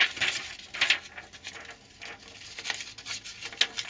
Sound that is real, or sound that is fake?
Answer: real